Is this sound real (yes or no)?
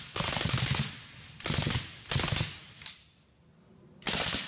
yes